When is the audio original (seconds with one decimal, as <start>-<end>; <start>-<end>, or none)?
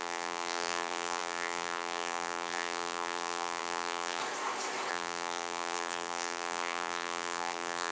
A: 4.2-4.9